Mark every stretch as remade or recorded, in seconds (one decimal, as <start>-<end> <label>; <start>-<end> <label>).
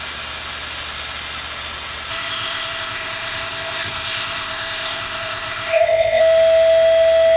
0.0-2.1 recorded; 2.1-6.2 remade; 6.2-7.4 recorded